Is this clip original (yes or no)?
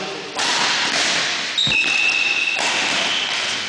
yes